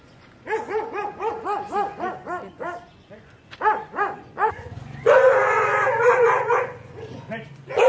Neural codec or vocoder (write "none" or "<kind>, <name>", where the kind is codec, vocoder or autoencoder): vocoder, Vocos